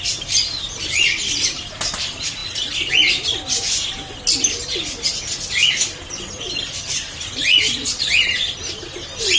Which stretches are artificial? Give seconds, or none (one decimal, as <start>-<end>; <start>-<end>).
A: none